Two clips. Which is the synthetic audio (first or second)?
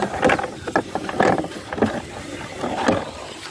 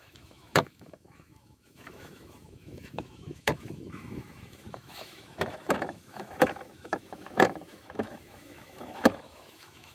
second